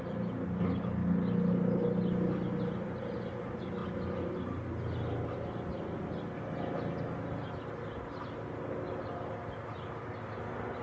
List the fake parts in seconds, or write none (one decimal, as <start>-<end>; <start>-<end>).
none